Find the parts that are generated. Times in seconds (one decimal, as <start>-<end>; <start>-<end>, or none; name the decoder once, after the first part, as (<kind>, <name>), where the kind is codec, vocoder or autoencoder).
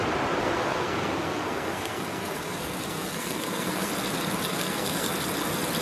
0.4-3.9 (codec, SNAC); 4.5-5.1